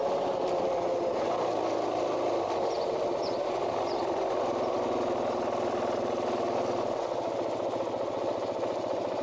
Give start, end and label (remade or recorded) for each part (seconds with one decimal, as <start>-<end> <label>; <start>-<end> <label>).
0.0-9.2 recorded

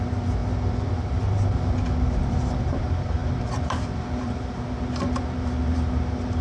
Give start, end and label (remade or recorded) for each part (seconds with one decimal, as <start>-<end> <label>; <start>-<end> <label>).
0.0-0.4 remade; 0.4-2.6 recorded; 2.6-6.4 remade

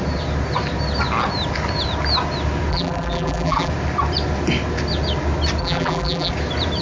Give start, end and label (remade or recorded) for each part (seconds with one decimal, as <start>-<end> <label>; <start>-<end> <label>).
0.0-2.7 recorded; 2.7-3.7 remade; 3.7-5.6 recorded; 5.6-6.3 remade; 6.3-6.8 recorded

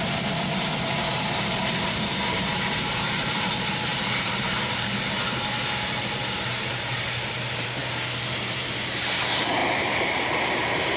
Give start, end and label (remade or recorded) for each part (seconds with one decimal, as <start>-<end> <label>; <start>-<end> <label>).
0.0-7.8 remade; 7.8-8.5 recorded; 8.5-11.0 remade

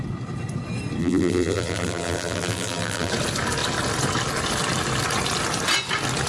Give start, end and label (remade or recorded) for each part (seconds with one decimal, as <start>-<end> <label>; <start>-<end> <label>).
0.0-1.0 recorded; 1.0-3.1 remade; 3.1-6.3 recorded

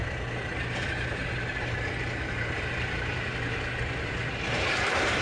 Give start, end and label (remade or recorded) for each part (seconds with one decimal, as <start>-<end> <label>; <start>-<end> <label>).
0.0-2.3 recorded; 2.3-3.3 remade; 3.3-4.0 recorded; 4.0-5.2 remade

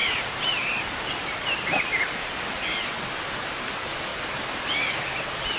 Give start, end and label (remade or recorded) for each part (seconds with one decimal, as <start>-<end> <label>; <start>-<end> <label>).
0.0-2.5 remade; 2.5-5.6 recorded